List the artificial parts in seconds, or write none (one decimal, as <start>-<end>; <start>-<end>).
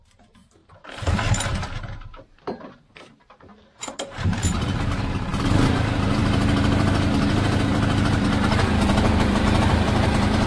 0.0-10.5